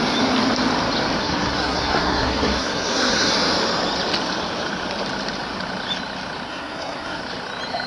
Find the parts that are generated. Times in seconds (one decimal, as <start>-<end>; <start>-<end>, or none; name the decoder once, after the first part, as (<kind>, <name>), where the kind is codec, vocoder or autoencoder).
1.2-3.3 (codec, SNAC); 6.5-7.2